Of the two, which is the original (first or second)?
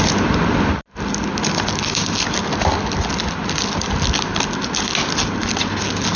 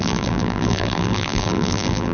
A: first